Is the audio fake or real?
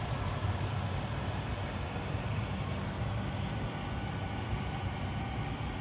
real